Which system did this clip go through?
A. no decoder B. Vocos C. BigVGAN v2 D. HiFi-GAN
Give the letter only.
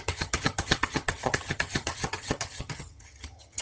D